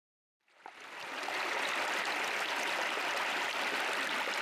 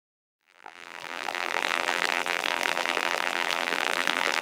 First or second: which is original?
first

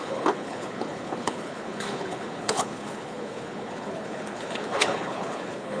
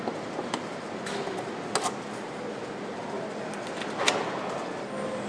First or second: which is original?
second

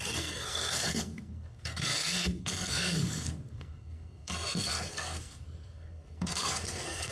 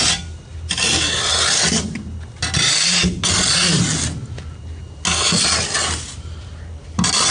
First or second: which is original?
second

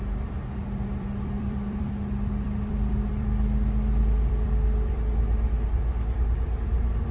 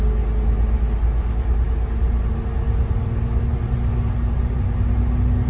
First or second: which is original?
second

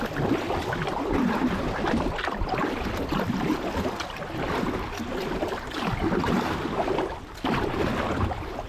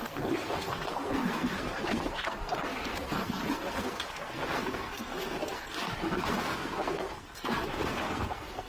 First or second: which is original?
first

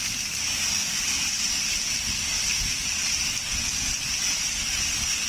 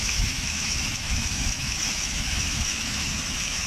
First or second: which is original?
first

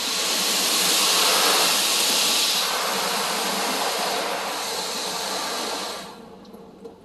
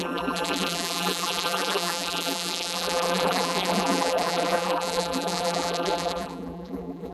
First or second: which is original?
first